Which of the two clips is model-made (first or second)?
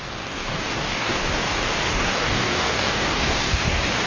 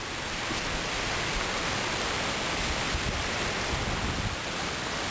first